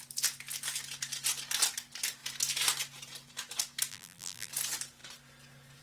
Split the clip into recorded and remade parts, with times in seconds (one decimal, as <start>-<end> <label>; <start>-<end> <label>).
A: 0.0-3.9 recorded; 3.9-4.5 remade; 4.5-5.8 recorded